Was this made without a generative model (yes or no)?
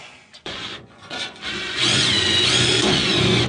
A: no